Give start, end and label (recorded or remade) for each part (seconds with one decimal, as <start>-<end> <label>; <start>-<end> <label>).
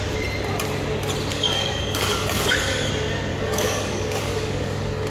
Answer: 0.0-1.3 recorded; 1.3-2.9 remade; 2.9-3.3 recorded; 3.3-5.1 remade